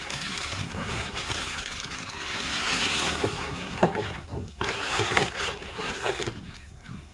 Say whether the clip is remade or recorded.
remade